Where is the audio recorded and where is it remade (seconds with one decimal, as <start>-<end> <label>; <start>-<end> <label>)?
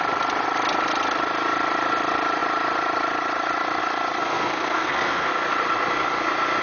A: 0.0-4.2 recorded; 4.2-5.3 remade; 5.3-6.6 recorded